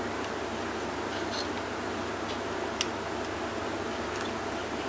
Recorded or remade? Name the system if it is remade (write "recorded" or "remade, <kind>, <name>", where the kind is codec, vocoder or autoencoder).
recorded